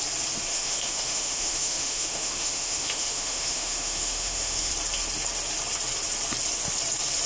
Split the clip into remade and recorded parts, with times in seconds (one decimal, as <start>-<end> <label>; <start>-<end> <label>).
0.0-0.5 recorded; 0.5-4.7 remade; 4.7-7.3 recorded